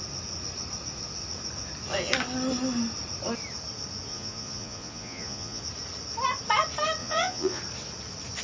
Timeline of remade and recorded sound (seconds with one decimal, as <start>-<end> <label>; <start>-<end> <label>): 0.0-4.1 recorded; 4.1-5.6 remade; 5.6-7.0 recorded; 7.0-7.6 remade; 7.6-8.4 recorded